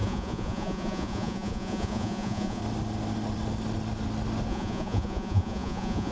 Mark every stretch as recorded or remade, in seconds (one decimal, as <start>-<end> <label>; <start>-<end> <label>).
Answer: 0.0-2.6 remade; 2.6-4.5 recorded; 4.5-6.1 remade